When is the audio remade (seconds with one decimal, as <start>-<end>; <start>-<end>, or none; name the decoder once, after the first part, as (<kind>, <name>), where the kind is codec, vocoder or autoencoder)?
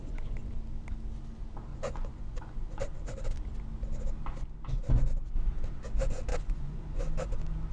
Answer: 0.0-0.5 (vocoder, Vocos); 1.7-2.8; 6.3-7.0